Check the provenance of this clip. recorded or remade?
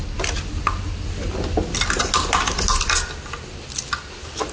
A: recorded